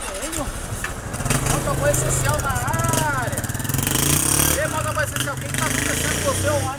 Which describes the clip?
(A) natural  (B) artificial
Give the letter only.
A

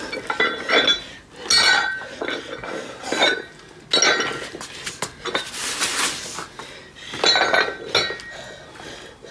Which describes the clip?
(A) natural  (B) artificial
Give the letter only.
A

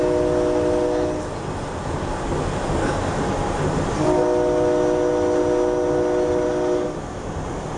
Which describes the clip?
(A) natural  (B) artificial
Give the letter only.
A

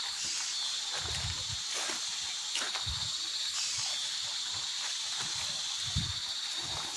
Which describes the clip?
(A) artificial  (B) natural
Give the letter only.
B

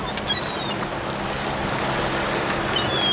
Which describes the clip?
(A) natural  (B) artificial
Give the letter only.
A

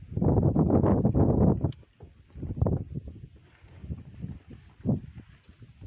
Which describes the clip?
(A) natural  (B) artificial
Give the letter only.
A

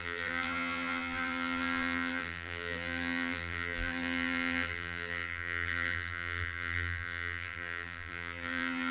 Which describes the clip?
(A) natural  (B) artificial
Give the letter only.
B